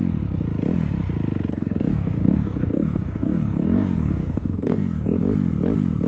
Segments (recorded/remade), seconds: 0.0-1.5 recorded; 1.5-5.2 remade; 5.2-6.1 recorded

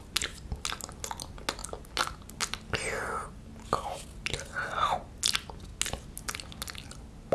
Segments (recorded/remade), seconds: 0.0-7.3 recorded

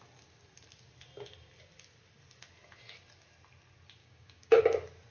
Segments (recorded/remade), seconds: 0.0-4.0 recorded; 4.0-4.6 remade; 4.6-5.1 recorded

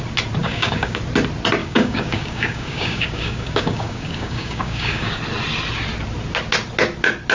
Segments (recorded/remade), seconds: 0.0-0.4 recorded; 0.4-1.0 remade; 1.0-1.6 recorded; 1.6-5.2 remade; 5.2-7.3 recorded

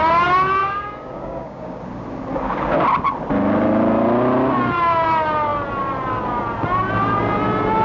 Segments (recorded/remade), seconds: 0.0-0.6 recorded; 0.6-1.8 remade; 1.8-7.8 recorded

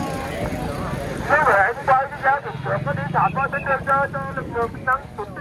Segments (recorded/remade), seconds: 0.0-4.4 recorded; 4.4-5.4 remade

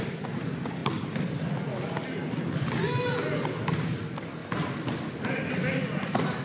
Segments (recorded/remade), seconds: 0.0-6.4 recorded

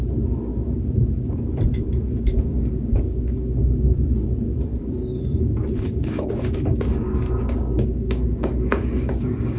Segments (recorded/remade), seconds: 0.0-0.5 recorded; 0.5-3.9 remade; 3.9-4.7 recorded; 4.7-9.6 remade